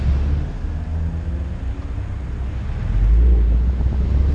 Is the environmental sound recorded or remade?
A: recorded